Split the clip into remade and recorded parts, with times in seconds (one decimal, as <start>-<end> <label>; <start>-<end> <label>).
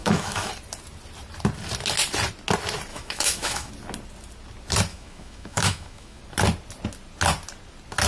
0.0-0.5 remade; 0.5-2.9 recorded; 2.9-3.7 remade; 3.7-4.9 recorded; 4.9-6.2 remade; 6.2-8.1 recorded